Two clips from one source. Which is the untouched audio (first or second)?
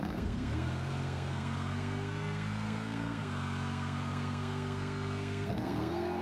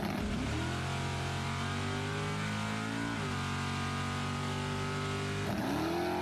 second